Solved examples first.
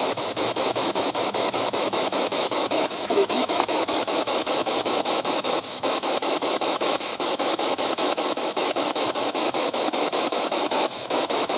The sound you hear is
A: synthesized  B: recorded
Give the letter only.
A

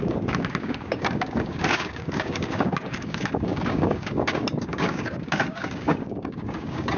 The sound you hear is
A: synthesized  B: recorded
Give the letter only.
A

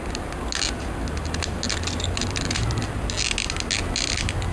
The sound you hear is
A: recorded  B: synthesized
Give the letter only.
A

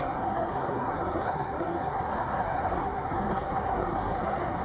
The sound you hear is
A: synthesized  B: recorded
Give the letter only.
A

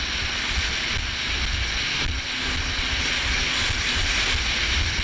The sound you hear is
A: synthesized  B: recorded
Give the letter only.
B